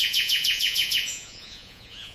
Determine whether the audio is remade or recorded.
remade